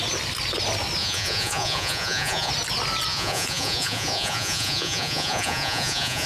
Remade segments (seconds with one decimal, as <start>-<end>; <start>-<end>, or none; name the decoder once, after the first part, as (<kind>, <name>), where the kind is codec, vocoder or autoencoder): 1.0-2.5 (vocoder, Vocos); 3.1-6.3